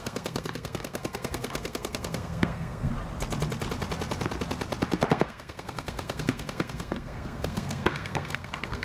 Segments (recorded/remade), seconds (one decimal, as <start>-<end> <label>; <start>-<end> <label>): 0.0-2.9 remade; 2.9-5.1 recorded; 5.1-8.8 remade